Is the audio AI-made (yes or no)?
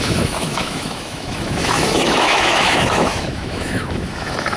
yes